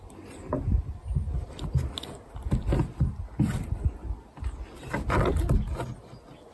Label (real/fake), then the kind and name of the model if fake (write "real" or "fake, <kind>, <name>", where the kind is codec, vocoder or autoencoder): real